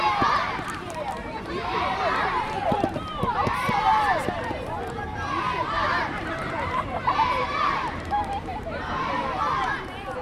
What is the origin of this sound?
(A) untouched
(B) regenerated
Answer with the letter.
B